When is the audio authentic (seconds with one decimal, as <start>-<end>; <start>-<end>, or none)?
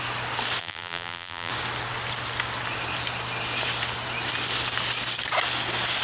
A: 0.0-0.6; 1.5-6.0